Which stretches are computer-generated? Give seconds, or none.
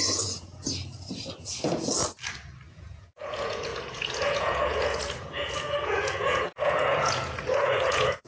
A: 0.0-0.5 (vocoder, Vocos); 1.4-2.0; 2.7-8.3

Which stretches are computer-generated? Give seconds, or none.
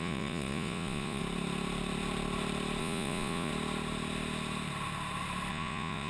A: 0.0-1.2 (vocoder, Vocos); 2.8-3.5; 5.5-6.1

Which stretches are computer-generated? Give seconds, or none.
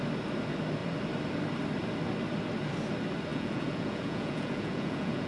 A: 3.3-5.3 (vocoder, Vocos)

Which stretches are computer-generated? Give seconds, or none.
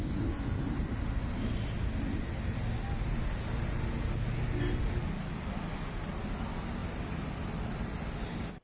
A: none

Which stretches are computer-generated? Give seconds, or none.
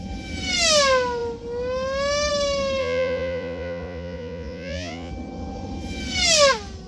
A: 2.8-5.1 (vocoder, Vocos)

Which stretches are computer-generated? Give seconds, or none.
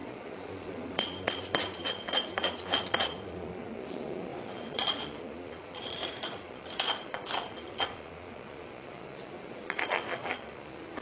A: 0.0-11.0 (vocoder, Vocos)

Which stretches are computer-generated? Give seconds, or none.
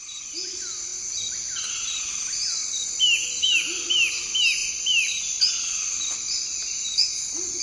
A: none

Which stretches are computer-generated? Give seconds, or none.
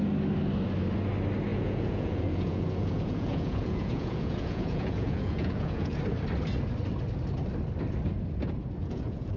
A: 1.5-6.0 (vocoder, Vocos); 8.8-9.4